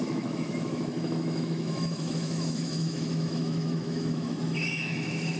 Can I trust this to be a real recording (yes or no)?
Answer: no